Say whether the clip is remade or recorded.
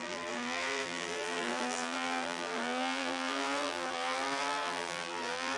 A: remade